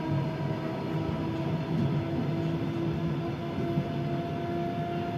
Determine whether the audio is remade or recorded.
recorded